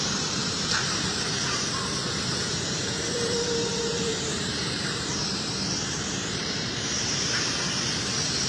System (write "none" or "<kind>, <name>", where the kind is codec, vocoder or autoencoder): vocoder, BigVGAN v2